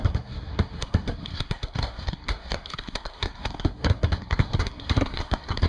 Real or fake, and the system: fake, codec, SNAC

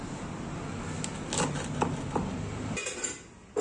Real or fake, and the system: real